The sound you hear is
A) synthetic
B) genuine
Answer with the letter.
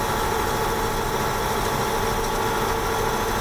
B